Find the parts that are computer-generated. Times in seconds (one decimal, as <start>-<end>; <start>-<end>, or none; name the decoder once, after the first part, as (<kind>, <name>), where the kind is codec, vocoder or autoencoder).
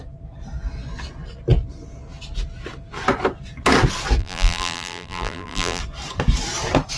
4.2-5.8 (vocoder, BigVGAN v2)